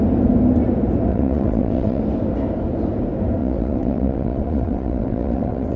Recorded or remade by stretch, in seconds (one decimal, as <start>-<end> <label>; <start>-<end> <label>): 0.0-1.1 recorded; 1.1-2.0 remade; 2.0-3.4 recorded; 3.4-5.8 remade